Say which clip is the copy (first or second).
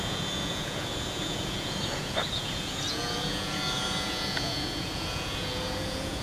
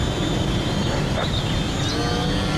first